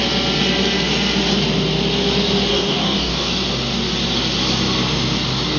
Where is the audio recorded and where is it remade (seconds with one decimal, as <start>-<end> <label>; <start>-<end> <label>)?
0.0-2.5 recorded; 2.5-3.3 remade; 3.3-5.6 recorded